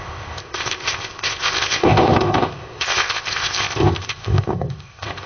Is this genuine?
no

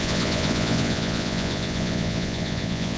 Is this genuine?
no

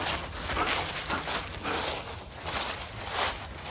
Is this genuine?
yes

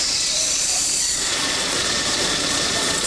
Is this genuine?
no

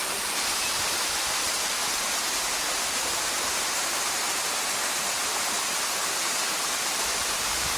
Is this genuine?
no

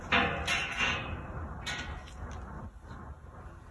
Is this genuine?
yes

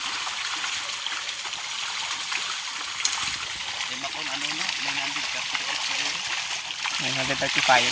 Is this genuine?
yes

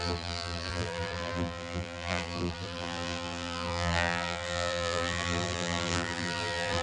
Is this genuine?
no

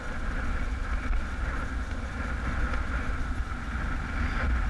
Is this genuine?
yes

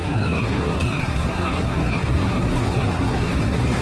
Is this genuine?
no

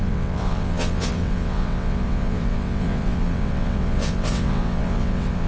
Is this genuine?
no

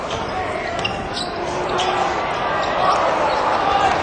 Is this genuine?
yes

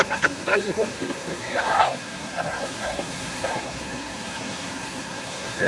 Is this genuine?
no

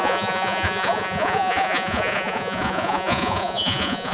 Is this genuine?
no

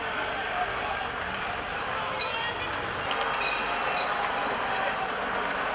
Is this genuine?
yes